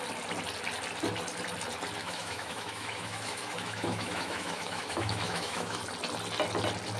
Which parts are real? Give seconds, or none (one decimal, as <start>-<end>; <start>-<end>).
0.0-2.0; 5.8-7.0